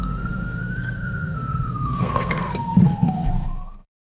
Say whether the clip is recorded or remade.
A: remade